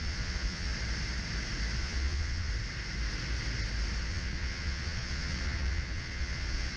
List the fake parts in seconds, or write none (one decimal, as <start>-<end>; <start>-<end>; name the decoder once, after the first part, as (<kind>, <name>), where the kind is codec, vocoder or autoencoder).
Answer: 0.0-0.7 (vocoder, Vocos); 1.8-2.5; 4.0-6.8